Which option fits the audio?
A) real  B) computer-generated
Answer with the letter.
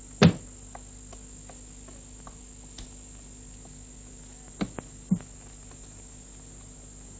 A